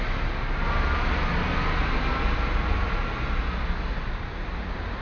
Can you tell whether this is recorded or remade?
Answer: recorded